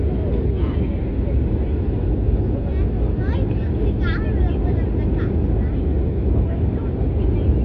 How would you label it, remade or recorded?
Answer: recorded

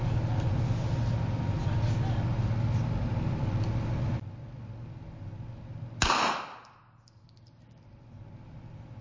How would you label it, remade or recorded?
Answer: recorded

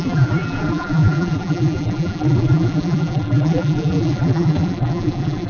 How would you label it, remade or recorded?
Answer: remade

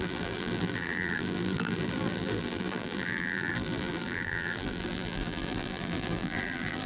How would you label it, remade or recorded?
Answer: remade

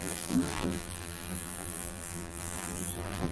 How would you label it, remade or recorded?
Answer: remade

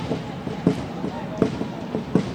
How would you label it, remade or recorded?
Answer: recorded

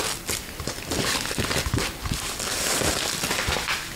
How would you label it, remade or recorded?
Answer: recorded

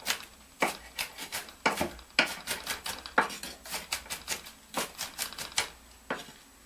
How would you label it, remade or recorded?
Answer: recorded